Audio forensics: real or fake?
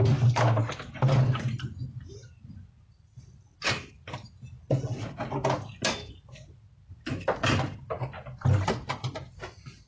real